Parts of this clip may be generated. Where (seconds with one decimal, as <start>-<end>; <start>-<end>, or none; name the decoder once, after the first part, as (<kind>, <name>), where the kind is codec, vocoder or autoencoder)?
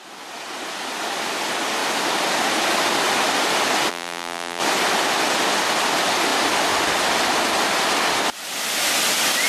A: 3.9-4.6 (vocoder, BigVGAN v2)